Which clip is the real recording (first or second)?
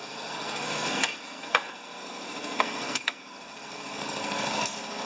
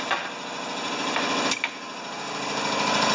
second